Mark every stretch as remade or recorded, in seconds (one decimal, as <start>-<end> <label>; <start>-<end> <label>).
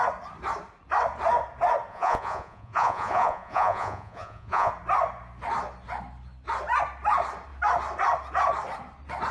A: 0.0-1.9 recorded; 1.9-4.7 remade; 4.7-9.3 recorded